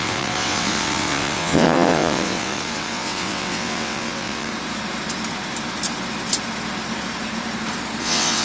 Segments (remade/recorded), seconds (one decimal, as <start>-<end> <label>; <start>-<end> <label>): 0.0-4.5 remade; 4.5-8.0 recorded; 8.0-8.4 remade